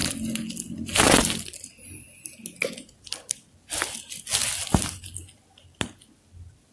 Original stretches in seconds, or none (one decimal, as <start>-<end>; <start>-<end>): 0.0-6.7